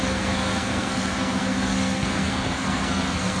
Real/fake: fake